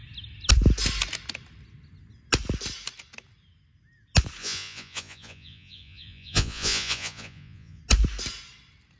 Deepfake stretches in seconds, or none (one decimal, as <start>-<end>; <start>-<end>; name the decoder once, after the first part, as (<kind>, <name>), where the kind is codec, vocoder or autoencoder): 4.4-7.8 (vocoder, Vocos)